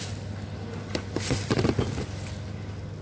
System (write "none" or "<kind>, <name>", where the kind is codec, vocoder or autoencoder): none